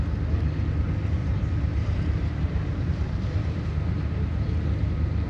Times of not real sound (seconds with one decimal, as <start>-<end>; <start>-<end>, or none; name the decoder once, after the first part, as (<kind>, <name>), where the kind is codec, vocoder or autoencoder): 1.2-3.6 (vocoder, BigVGAN v2)